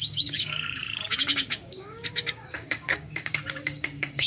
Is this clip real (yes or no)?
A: no